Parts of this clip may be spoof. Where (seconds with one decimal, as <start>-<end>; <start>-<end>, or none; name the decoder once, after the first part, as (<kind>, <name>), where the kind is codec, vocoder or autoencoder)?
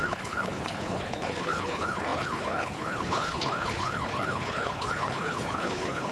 0.0-6.1 (codec, HILCodec)